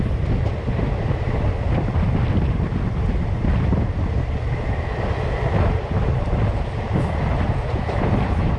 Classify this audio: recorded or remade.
recorded